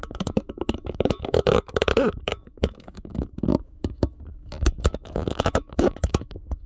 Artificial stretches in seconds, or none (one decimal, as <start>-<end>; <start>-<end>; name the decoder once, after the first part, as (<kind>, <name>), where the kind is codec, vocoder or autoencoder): 0.0-6.7 (autoencoder, DAC-VAE)